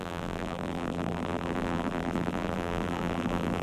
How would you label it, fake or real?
fake